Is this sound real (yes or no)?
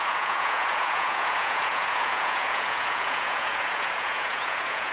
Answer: no